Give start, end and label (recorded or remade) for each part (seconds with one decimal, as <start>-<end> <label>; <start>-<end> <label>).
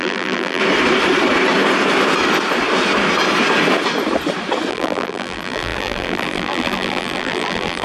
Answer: 0.0-0.6 remade; 0.6-4.7 recorded; 4.7-7.8 remade